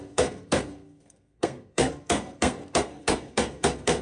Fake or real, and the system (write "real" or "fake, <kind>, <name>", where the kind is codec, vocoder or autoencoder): fake, codec, SNAC